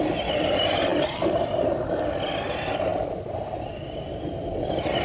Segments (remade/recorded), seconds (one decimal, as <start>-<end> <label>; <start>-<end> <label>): 0.0-2.9 recorded; 2.9-3.7 remade; 3.7-5.0 recorded